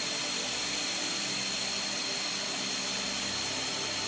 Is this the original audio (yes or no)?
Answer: yes